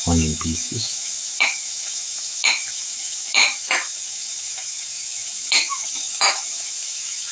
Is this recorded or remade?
remade